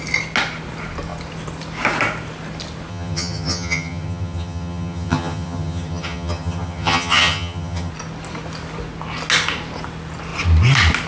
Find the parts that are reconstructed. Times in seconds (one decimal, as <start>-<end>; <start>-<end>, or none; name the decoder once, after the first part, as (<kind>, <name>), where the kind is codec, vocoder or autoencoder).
2.9-7.9 (vocoder, HiFi-GAN)